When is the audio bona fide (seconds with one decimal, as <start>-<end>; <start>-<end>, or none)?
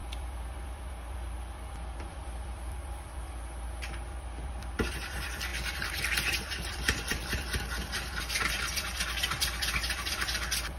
none